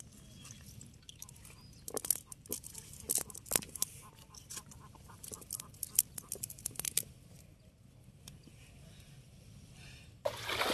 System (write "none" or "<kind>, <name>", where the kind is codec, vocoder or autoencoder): none